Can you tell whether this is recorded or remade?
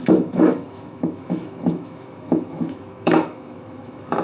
remade